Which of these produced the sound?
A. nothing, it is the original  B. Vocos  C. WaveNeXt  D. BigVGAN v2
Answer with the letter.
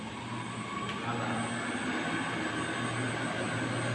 A